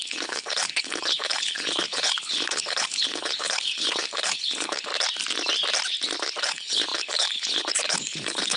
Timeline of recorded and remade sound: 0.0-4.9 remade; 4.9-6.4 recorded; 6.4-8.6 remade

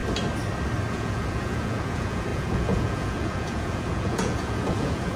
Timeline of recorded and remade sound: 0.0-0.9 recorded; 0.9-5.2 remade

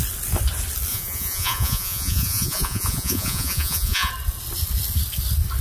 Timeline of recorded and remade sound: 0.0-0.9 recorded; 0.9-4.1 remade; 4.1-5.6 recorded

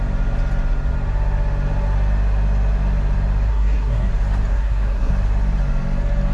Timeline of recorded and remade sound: 0.0-3.5 recorded; 3.5-4.1 remade; 4.1-4.5 recorded; 4.5-5.1 remade; 5.1-6.3 recorded

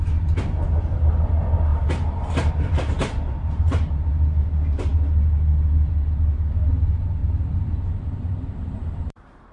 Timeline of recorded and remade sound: 0.0-1.7 recorded; 1.7-2.5 remade; 2.5-3.0 recorded; 3.0-4.1 remade; 4.1-7.2 recorded; 7.2-9.5 remade

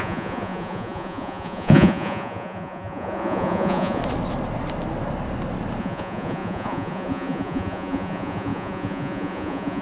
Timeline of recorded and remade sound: 0.0-4.0 remade; 4.0-5.8 recorded; 5.8-9.8 remade